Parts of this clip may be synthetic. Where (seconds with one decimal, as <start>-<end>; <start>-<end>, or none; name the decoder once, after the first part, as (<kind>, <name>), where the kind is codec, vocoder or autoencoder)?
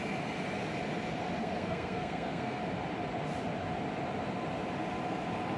1.4-2.6 (codec, SNAC)